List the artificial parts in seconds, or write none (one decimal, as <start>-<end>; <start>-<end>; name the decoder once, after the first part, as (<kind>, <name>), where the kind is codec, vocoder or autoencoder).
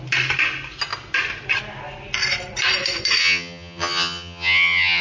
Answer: 3.2-5.0 (vocoder, HiFi-GAN)